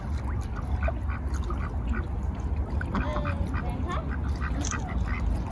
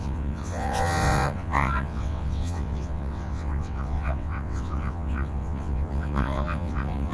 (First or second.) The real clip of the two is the first